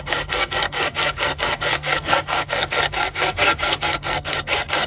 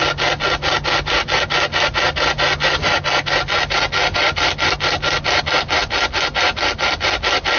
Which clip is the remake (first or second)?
first